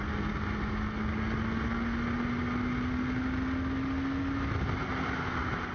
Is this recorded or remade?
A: recorded